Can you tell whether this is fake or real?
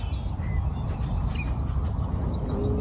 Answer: real